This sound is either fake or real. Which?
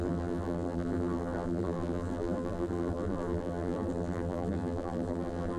fake